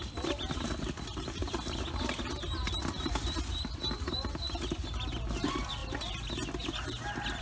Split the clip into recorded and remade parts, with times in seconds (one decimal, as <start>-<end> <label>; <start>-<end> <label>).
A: 0.0-7.4 recorded